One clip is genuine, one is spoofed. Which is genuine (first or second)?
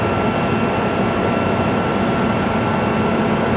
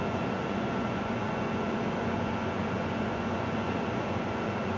first